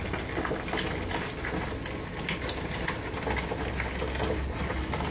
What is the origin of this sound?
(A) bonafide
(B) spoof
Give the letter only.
A